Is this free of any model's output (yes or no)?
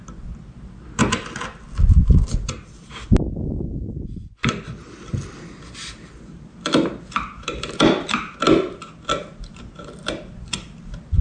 yes